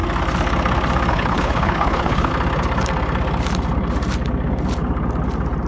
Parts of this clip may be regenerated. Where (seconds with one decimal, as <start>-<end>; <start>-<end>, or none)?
1.1-2.3